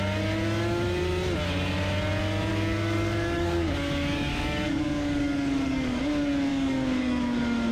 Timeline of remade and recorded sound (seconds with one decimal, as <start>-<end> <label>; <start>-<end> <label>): 0.0-2.5 recorded; 2.5-6.0 remade; 6.0-6.5 recorded; 6.5-7.7 remade